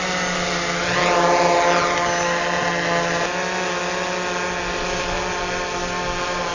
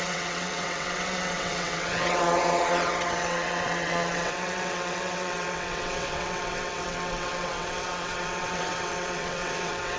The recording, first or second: first